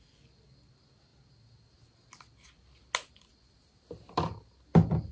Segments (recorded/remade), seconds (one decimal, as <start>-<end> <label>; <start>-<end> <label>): 0.0-5.1 recorded